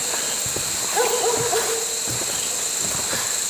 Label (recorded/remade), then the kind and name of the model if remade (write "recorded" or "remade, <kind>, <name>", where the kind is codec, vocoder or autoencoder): recorded